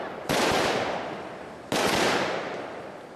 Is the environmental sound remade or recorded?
remade